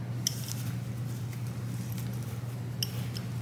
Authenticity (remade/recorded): recorded